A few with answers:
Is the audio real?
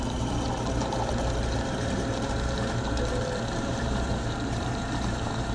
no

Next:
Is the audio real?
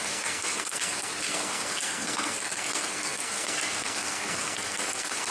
no